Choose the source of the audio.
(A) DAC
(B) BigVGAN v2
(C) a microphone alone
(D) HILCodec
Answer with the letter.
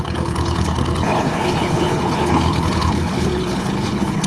D